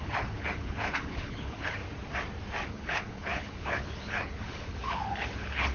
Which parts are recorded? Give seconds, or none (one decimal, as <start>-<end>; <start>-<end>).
1.8-2.7